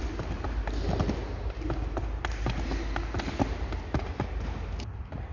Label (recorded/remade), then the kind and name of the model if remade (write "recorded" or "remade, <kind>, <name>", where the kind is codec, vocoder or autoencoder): recorded